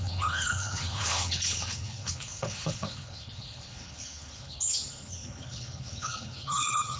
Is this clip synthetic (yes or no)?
yes